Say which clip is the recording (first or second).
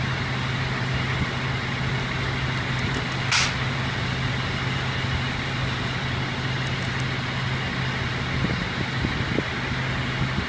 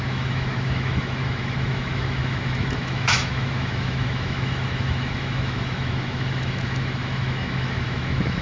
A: first